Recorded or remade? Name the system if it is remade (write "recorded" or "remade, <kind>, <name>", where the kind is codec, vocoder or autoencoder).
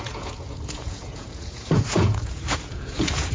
remade, vocoder, Vocos